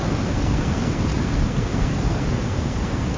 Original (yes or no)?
no